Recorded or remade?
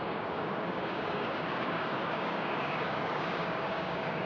remade